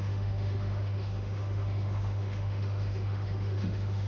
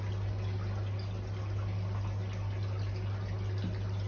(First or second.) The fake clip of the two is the first